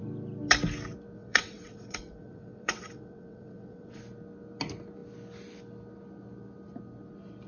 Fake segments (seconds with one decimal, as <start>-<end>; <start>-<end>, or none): 1.2-4.0